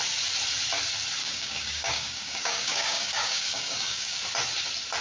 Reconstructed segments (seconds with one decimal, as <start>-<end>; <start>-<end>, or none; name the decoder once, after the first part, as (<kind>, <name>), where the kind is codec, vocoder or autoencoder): 1.2-4.2 (codec, DAC)